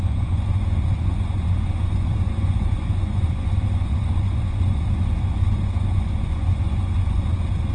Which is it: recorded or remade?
remade